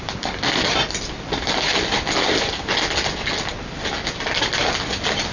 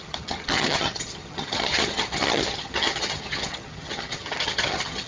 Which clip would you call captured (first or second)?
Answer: first